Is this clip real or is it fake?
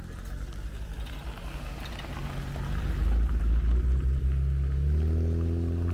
real